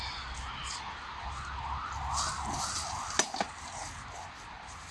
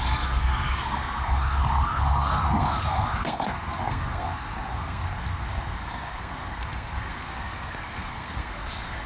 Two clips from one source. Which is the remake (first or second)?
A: second